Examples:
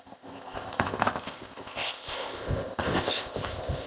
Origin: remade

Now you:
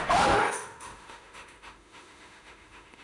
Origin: remade